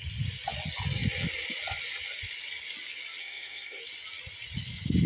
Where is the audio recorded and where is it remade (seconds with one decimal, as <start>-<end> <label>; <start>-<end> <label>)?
0.0-3.2 recorded; 3.2-3.8 remade; 3.8-5.1 recorded